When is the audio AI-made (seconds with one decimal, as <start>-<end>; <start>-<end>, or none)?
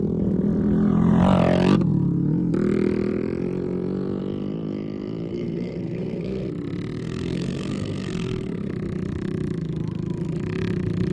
5.3-6.5; 7.0-8.7